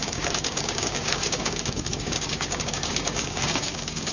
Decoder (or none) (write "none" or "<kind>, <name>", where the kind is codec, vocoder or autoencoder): codec, DAC